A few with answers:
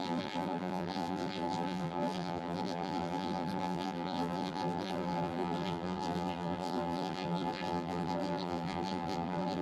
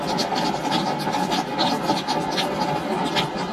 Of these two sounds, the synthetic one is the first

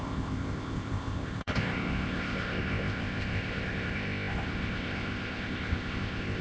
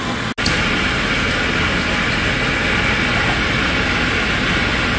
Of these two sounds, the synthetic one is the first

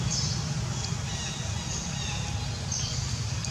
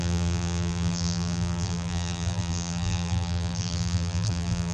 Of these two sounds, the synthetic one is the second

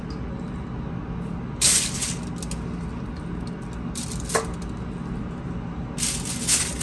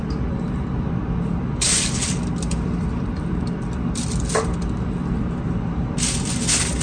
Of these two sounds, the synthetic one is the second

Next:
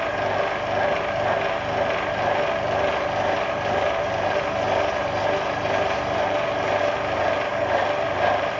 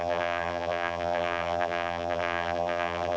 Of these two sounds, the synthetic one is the second